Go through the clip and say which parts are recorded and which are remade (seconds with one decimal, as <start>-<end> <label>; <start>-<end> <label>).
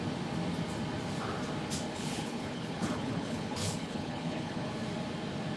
0.0-1.9 recorded; 1.9-4.7 remade; 4.7-5.6 recorded